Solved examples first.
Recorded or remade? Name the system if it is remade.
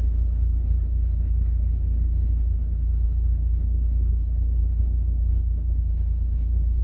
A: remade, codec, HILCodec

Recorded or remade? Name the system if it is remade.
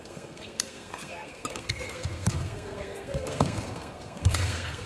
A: remade, codec, SNAC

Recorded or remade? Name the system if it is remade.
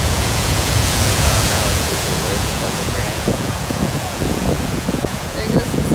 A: remade, vocoder, Vocos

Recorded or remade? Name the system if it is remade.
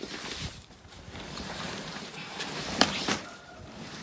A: remade, vocoder, BigVGAN v2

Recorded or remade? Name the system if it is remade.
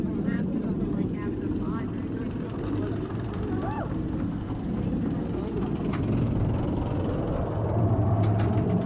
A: remade, vocoder, BigVGAN v2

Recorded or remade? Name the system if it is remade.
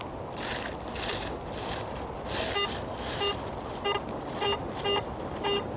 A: recorded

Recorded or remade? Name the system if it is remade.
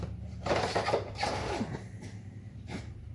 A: remade, vocoder, BigVGAN v2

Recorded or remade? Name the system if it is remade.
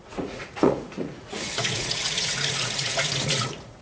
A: remade, vocoder, Vocos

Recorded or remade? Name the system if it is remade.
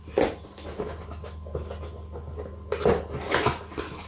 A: recorded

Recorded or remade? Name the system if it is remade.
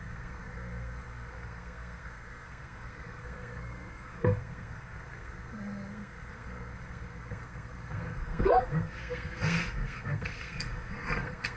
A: remade, codec, SNAC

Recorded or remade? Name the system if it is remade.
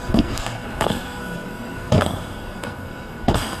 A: remade, codec, SNAC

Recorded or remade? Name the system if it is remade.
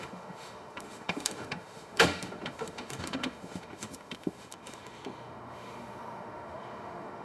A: remade, autoencoder, DAC-VAE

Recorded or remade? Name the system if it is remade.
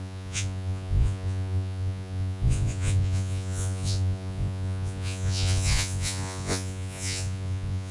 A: remade, vocoder, Vocos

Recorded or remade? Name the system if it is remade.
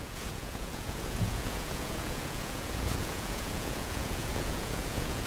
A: remade, vocoder, Vocos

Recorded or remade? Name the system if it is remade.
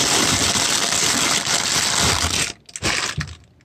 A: recorded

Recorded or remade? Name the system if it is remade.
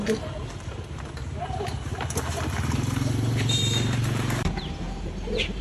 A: remade, vocoder, BigVGAN v2